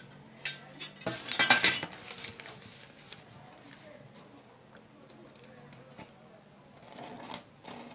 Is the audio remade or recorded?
recorded